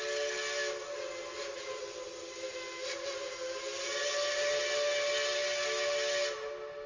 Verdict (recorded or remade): recorded